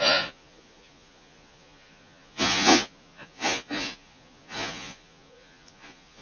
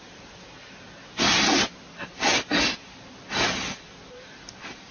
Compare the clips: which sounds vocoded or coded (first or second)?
first